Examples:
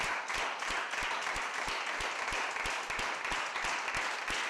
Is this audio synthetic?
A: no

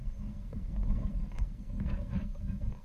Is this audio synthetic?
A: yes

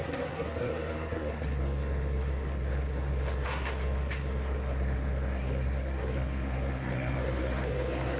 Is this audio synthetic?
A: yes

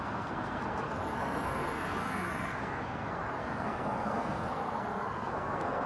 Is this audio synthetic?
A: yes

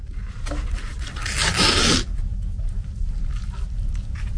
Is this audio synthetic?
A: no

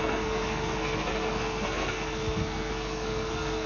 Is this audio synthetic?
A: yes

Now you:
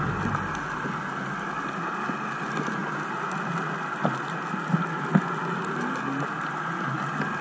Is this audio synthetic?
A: no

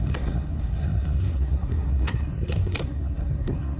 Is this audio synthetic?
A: yes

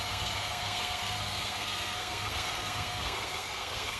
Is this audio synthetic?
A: yes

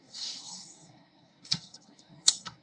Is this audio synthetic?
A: yes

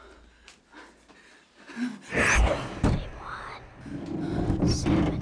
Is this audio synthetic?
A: no